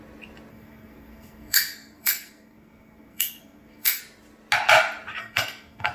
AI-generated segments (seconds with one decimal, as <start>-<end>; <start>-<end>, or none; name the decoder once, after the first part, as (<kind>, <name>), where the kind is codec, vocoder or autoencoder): 0.5-4.0 (codec, SNAC); 5.2-5.9